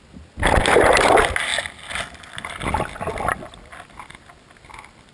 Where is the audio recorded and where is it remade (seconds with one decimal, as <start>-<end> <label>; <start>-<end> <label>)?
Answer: 0.0-5.1 recorded